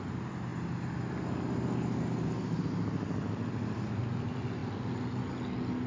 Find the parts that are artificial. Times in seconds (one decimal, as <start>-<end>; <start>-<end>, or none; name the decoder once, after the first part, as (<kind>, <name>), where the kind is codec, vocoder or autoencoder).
none